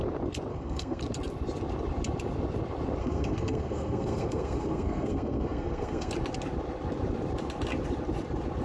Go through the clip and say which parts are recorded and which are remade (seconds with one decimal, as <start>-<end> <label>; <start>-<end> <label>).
0.0-0.5 recorded; 0.5-1.0 remade; 1.0-3.0 recorded; 3.0-6.1 remade; 6.1-8.6 recorded